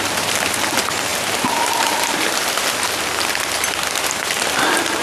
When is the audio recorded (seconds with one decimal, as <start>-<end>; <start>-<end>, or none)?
0.0-5.0